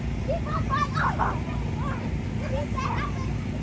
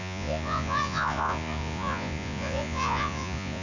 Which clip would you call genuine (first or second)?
first